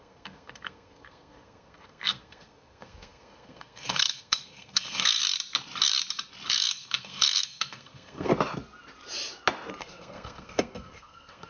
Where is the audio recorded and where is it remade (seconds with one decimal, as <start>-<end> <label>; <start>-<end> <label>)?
0.0-5.2 remade; 5.2-6.5 recorded; 6.5-8.3 remade; 8.3-9.8 recorded; 9.8-11.5 remade

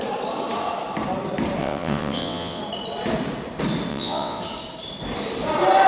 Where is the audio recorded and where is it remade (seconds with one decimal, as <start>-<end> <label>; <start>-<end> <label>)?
0.0-1.6 recorded; 1.6-2.6 remade; 2.6-3.9 recorded; 3.9-4.4 remade; 4.4-5.9 recorded

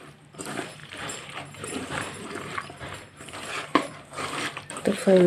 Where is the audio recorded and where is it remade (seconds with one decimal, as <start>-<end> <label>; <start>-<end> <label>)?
0.0-5.3 remade

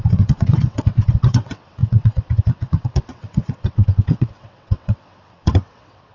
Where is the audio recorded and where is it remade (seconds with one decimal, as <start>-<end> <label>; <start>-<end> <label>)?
0.0-6.1 remade

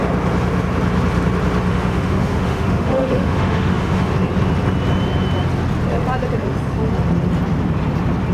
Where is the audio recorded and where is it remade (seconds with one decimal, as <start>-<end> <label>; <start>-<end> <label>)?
0.0-1.7 recorded; 1.7-4.1 remade; 4.1-8.3 recorded

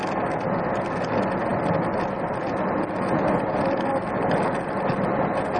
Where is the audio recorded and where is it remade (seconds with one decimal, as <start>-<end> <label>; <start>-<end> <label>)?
0.0-5.6 recorded

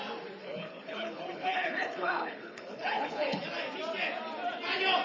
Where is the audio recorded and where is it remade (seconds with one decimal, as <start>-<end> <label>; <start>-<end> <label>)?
0.0-0.4 recorded; 0.4-3.4 remade; 3.4-5.0 recorded

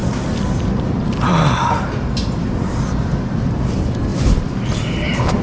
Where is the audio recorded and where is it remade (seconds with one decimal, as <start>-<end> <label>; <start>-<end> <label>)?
0.0-4.1 recorded; 4.1-5.4 remade